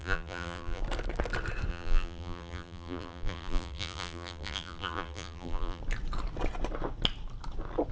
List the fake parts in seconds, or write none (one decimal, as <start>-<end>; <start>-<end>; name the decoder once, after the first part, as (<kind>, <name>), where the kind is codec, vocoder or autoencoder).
0.0-0.8 (vocoder, BigVGAN v2); 1.7-5.8